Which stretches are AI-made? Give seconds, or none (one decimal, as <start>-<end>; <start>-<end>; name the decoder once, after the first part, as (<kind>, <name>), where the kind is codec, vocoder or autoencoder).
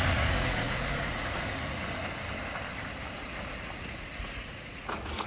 0.0-1.8 (vocoder, Vocos); 3.2-5.3